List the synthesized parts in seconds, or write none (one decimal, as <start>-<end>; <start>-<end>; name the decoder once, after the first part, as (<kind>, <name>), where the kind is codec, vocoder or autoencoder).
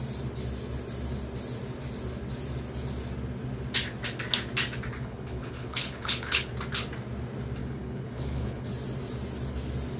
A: 4.9-6.5 (codec, HILCodec); 7.6-8.7